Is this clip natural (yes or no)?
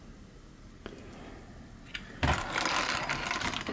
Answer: yes